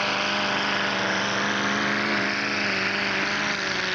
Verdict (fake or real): real